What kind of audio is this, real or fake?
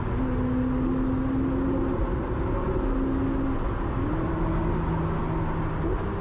real